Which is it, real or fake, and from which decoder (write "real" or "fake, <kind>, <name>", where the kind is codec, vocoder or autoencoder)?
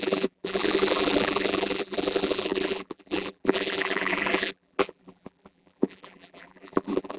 fake, vocoder, BigVGAN v2